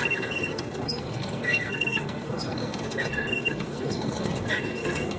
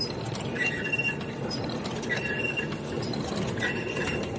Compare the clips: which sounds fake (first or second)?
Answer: first